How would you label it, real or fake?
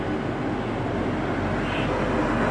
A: real